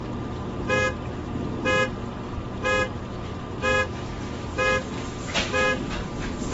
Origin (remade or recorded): recorded